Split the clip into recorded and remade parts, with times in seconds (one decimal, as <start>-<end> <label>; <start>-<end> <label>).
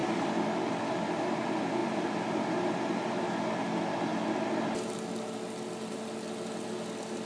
0.0-1.2 remade; 1.2-1.8 recorded; 1.8-3.4 remade; 3.4-7.3 recorded